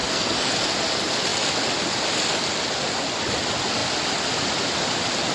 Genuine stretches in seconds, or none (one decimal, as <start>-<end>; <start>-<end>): 0.5-5.3